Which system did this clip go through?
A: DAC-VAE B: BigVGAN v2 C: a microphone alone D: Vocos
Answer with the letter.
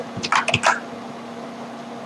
C